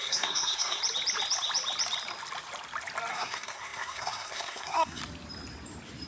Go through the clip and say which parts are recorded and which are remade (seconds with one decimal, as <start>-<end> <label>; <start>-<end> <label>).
0.0-0.8 remade; 0.8-3.1 recorded; 3.1-5.0 remade; 5.0-6.1 recorded